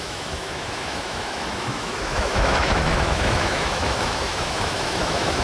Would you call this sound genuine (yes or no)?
no